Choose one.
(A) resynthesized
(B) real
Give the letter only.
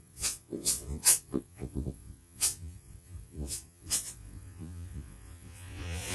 A